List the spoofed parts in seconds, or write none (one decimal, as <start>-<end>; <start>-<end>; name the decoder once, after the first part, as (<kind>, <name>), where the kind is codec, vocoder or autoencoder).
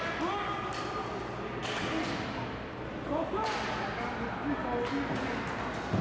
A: none